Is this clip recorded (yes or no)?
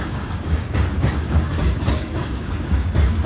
no